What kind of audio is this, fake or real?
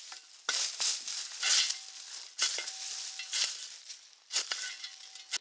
real